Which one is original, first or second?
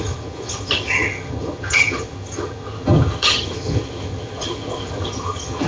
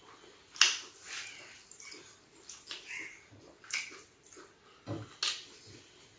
second